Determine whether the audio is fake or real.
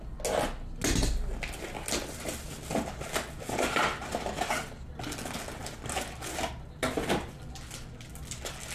real